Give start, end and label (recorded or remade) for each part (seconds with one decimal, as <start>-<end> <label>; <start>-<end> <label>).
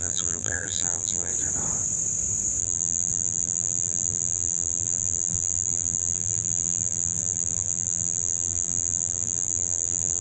0.0-1.3 remade; 1.3-2.6 recorded; 2.6-10.2 remade